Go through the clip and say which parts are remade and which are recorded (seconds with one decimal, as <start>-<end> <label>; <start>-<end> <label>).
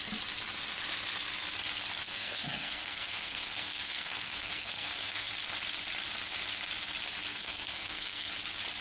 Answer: 0.0-2.0 recorded; 2.0-5.3 remade; 5.3-7.3 recorded; 7.3-8.3 remade; 8.3-8.8 recorded